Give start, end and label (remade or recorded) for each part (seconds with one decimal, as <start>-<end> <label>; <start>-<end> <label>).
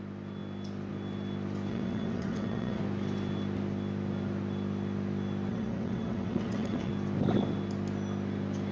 0.0-1.7 recorded; 1.7-2.8 remade; 2.8-5.5 recorded; 5.5-6.9 remade; 6.9-8.7 recorded